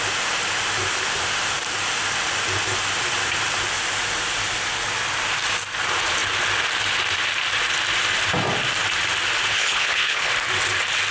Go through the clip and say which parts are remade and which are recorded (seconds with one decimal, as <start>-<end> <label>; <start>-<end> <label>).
0.0-9.5 recorded; 9.5-10.3 remade; 10.3-11.1 recorded